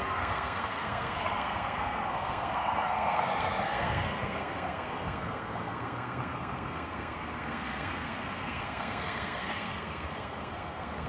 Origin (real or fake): fake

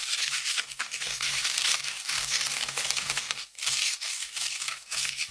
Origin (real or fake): fake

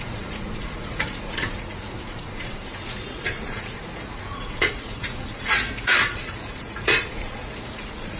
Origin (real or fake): fake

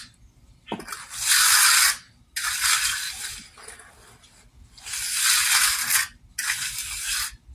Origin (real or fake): real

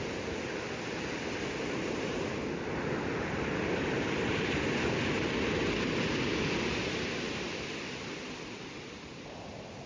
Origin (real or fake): real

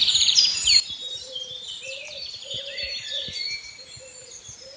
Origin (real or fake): fake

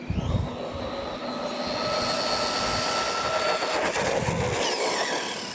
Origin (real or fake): real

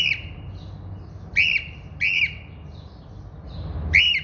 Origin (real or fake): real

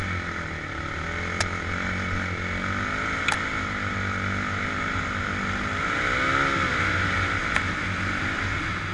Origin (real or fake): real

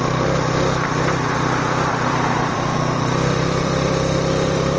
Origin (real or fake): fake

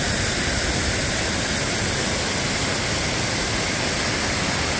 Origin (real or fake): real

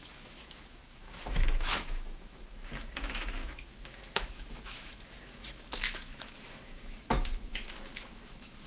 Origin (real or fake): fake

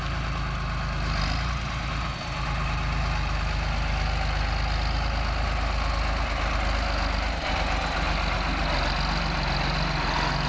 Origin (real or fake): real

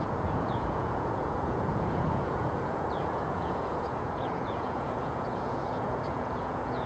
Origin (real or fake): fake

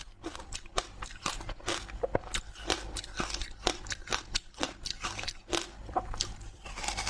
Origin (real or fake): real